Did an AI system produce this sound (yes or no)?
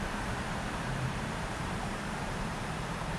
yes